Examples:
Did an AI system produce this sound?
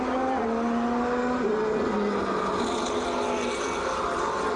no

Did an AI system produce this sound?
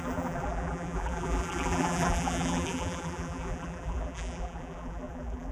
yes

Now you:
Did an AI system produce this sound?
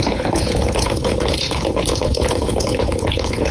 yes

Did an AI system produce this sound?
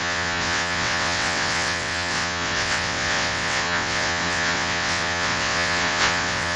yes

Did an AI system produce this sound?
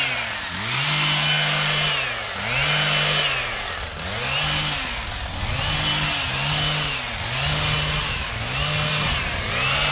no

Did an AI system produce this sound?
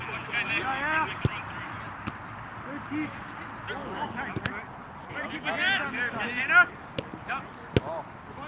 no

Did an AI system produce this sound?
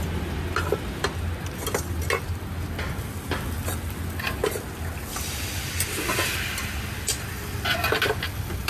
no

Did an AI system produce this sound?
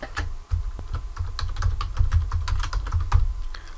no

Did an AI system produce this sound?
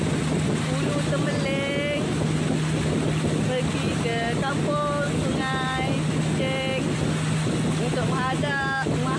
no